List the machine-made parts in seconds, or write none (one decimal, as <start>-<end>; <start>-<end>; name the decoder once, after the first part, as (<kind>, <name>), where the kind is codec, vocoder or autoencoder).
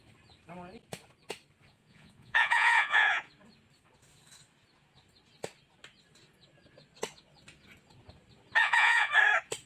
1.7-3.3 (vocoder, Vocos); 8.6-9.1